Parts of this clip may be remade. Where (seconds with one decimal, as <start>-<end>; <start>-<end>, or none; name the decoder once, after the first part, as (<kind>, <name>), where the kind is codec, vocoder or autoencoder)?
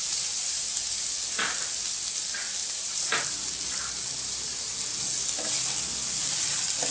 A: 0.0-0.6 (vocoder, BigVGAN v2); 2.6-3.2